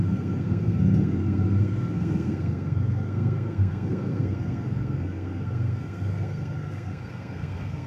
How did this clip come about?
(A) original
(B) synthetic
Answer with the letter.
B